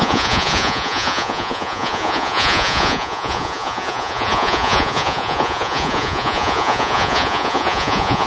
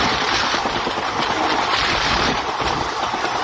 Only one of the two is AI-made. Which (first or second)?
first